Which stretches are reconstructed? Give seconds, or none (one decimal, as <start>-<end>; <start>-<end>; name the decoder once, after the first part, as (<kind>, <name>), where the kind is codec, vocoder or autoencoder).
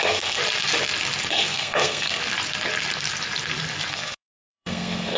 0.0-0.4 (codec, SNAC); 1.3-2.2; 3.9-5.2